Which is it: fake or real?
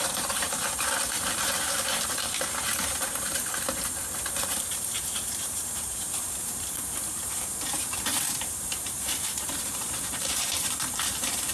fake